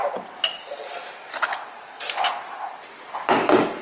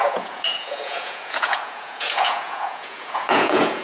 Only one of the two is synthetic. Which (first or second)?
second